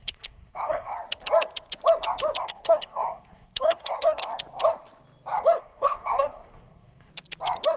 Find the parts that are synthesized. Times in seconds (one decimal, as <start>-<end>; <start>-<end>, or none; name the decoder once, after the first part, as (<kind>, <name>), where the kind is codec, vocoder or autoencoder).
0.0-0.9 (codec, SNAC); 2.4-4.2; 5.6-7.1